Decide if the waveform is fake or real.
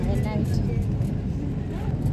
real